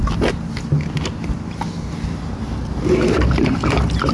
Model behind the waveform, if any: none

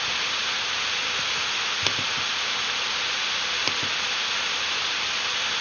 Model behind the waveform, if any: none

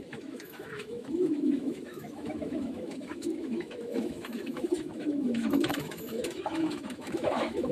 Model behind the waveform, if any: autoencoder, DAC-VAE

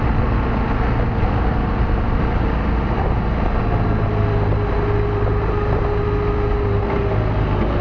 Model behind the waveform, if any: none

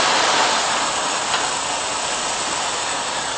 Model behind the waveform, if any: none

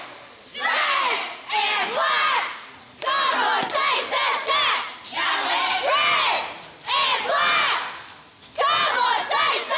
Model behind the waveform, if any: none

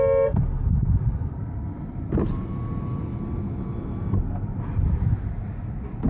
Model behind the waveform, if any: none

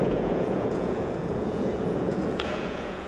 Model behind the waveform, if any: vocoder, Vocos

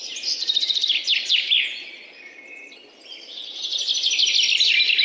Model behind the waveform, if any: none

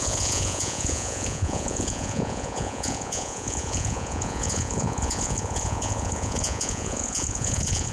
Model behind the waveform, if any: vocoder, Vocos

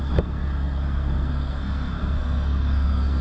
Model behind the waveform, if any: codec, SNAC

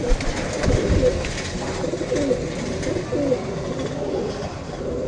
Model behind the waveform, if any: none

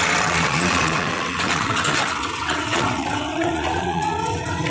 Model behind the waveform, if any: vocoder, WaveNeXt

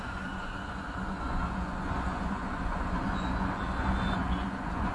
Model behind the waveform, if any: vocoder, Vocos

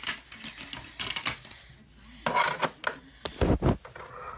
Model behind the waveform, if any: none